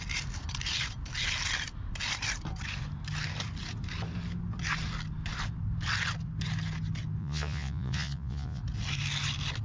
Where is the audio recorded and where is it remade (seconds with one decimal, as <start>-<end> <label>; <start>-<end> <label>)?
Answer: 0.0-7.2 recorded; 7.2-8.6 remade; 8.6-9.6 recorded

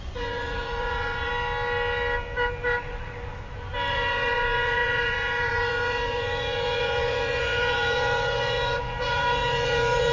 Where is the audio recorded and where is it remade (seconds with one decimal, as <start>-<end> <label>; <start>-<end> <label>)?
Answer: 0.0-1.3 remade; 1.3-3.9 recorded; 3.9-10.1 remade

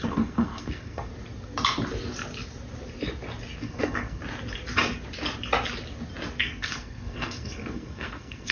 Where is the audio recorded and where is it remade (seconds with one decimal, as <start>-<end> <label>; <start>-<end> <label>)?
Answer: 0.0-1.1 remade; 1.1-3.6 recorded; 3.6-4.2 remade; 4.2-6.4 recorded; 6.4-8.5 remade

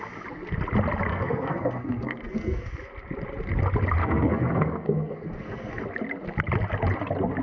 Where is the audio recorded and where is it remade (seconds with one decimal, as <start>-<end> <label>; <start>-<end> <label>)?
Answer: 0.0-1.1 recorded; 1.1-2.7 remade; 2.7-4.0 recorded; 4.0-5.8 remade; 5.8-7.4 recorded

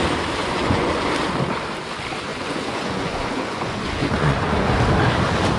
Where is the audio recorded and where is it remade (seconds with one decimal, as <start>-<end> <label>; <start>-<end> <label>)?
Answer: 0.0-0.4 recorded; 0.4-1.1 remade; 1.1-2.3 recorded; 2.3-4.8 remade; 4.8-5.6 recorded